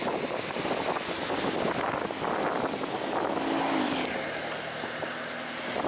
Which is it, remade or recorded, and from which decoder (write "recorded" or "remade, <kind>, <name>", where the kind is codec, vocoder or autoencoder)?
recorded